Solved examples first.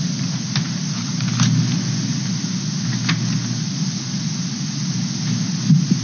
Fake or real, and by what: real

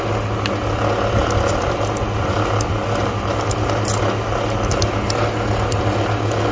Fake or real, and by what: real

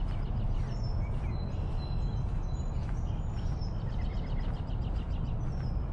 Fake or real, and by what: real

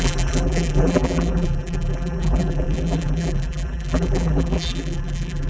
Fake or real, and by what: fake, vocoder, BigVGAN v2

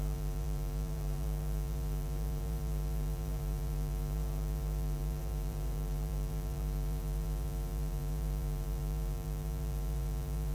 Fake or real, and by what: fake, vocoder, BigVGAN v2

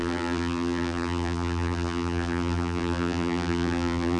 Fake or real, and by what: fake, vocoder, BigVGAN v2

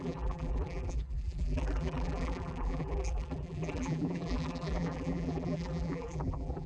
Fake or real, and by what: fake, vocoder, BigVGAN v2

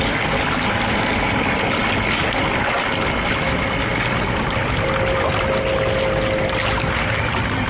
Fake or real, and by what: real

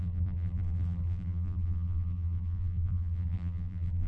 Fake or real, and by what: fake, vocoder, BigVGAN v2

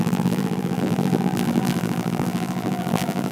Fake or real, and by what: fake, vocoder, BigVGAN v2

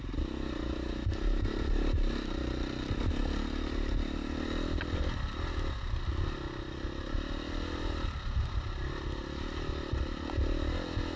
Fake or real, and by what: real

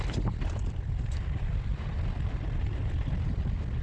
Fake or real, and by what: fake, vocoder, BigVGAN v2